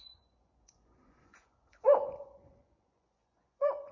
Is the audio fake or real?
fake